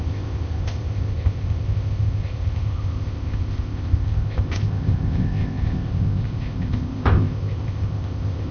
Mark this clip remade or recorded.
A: remade